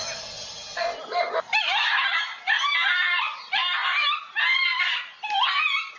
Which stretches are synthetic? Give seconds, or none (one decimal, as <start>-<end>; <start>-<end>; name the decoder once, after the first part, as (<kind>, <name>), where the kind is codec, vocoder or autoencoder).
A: none